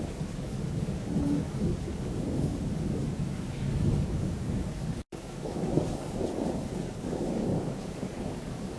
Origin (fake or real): fake